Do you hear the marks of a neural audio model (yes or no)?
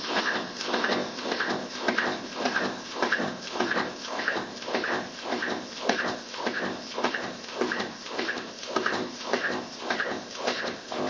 yes